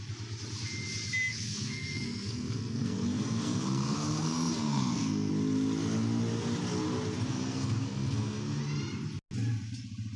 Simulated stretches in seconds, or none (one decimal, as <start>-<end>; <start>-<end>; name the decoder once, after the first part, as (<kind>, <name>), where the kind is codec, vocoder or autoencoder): 1.3-5.3 (codec, SNAC); 7.3-8.6